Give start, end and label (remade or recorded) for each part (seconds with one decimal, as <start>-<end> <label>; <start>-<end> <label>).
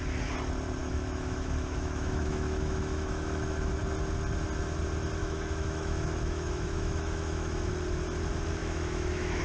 0.0-0.8 recorded; 0.8-3.8 remade; 3.8-5.2 recorded; 5.2-7.7 remade; 7.7-8.6 recorded; 8.6-9.4 remade